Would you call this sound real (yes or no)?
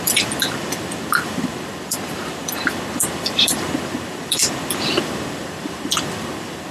no